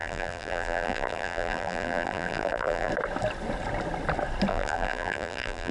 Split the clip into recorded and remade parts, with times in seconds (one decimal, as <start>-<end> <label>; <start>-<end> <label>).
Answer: 0.0-2.9 remade; 2.9-4.5 recorded; 4.5-5.7 remade